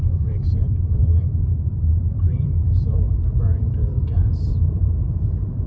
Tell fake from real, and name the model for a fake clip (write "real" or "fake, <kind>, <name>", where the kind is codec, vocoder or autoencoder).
fake, vocoder, BigVGAN v2